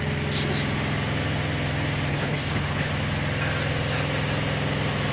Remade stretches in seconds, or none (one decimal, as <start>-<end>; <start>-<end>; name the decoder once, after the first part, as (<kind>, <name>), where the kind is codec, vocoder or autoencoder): 2.1-2.9 (codec, HILCodec)